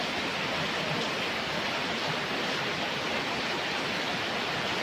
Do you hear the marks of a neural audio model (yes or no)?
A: no